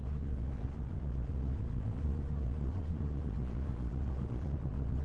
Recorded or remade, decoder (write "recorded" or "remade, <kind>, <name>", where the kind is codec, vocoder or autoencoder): remade, vocoder, Vocos